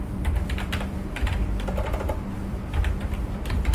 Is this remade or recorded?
remade